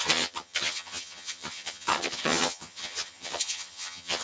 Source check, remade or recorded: remade